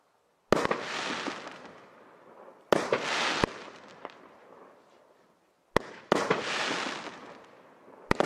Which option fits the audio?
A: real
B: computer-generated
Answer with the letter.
A